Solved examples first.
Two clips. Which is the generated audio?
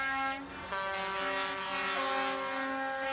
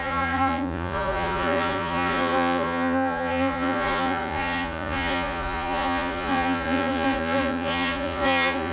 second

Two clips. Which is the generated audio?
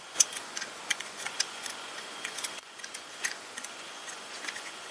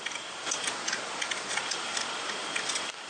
first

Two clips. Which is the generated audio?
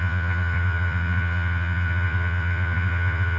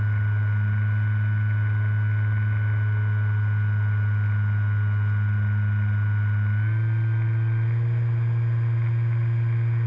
first